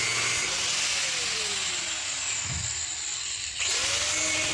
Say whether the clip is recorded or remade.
recorded